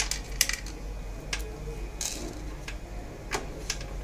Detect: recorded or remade recorded